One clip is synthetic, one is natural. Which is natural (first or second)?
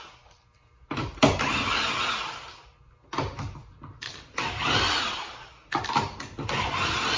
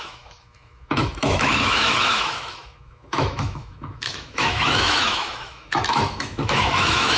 first